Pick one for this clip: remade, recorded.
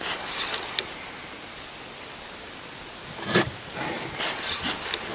recorded